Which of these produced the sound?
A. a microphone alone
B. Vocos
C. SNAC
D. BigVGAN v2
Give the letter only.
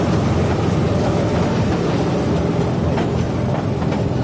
A